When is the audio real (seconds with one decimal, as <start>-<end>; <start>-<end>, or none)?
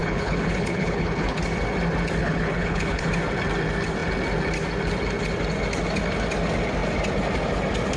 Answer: 1.4-2.2; 3.0-8.0